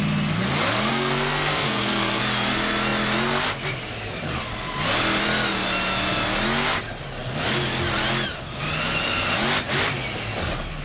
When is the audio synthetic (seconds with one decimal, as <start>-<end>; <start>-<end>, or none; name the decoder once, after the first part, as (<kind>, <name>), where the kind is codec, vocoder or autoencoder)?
0.9-2.2 (codec, SNAC)

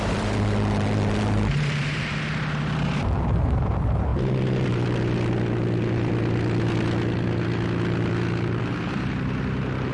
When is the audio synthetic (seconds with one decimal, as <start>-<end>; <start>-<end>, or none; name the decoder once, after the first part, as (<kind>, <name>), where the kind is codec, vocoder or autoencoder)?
0.0-4.1 (vocoder, BigVGAN v2); 8.6-9.9

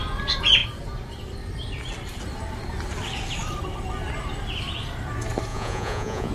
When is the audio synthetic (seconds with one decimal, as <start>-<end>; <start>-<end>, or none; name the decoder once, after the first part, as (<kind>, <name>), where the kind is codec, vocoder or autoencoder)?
5.5-6.3 (vocoder, Vocos)

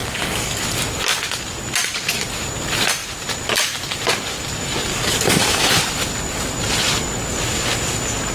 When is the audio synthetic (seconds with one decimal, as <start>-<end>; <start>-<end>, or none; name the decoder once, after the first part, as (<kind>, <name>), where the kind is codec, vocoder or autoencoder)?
0.0-0.6 (codec, DAC); 4.9-5.7

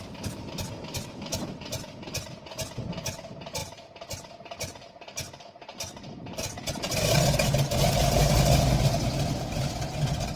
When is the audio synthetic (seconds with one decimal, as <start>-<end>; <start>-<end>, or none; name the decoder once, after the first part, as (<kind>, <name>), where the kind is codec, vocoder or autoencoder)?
3.6-4.3 (vocoder, BigVGAN v2); 5.7-10.4

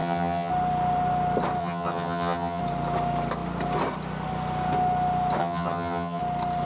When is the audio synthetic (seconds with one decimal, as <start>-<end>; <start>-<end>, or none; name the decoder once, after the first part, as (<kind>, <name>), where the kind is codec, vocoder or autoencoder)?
0.0-0.5 (vocoder, HiFi-GAN); 1.6-2.6; 5.4-6.2

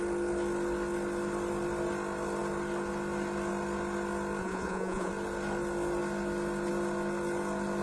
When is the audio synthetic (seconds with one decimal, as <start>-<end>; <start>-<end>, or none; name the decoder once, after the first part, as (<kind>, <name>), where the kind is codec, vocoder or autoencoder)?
4.4-5.1 (vocoder, Vocos)

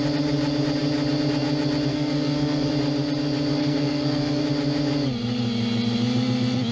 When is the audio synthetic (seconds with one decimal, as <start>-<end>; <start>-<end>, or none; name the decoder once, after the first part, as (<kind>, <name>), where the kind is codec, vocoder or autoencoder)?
1.9-2.7 (codec, SNAC); 3.6-4.4